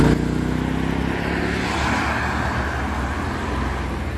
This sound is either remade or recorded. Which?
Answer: recorded